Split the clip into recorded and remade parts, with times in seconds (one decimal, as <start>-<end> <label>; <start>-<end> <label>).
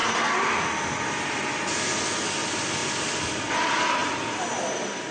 0.0-5.1 recorded